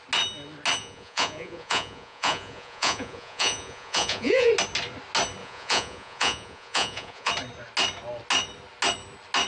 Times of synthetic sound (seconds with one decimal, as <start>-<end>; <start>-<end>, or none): 0.8-4.5; 5.4-7.3